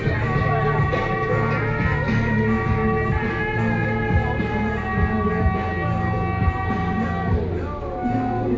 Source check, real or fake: real